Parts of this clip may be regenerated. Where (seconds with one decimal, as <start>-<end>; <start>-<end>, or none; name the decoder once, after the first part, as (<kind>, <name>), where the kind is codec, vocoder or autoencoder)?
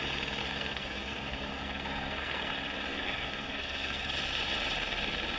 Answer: 0.4-2.5 (codec, SNAC); 2.9-4.1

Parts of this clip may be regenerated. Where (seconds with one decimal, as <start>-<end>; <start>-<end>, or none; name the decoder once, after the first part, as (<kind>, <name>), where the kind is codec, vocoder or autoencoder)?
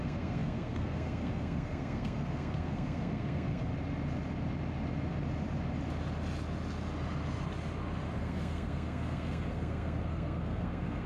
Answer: 0.0-3.7 (codec, SNAC); 8.2-11.1